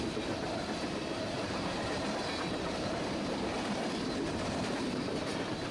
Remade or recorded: remade